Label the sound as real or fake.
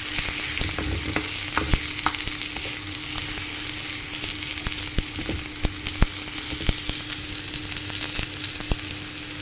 real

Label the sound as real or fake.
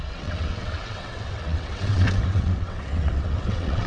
fake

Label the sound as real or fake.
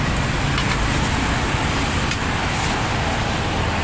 real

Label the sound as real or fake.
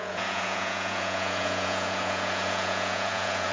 fake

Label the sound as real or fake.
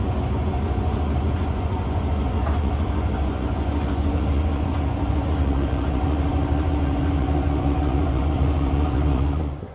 fake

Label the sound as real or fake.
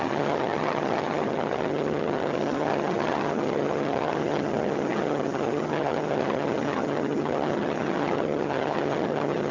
fake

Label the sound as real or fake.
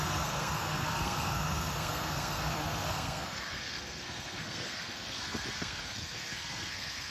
fake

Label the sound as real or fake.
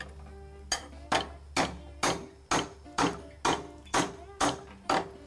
real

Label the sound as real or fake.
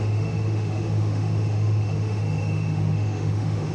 fake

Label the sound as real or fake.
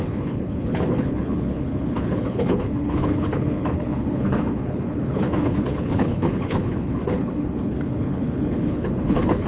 fake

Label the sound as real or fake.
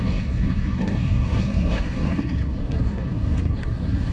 fake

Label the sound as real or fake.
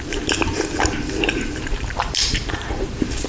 fake